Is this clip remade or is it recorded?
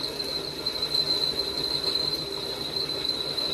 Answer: recorded